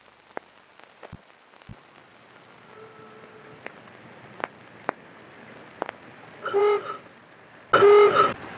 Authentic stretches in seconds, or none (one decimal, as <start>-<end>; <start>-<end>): 0.0-8.6